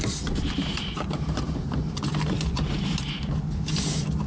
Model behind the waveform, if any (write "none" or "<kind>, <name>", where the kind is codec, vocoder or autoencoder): none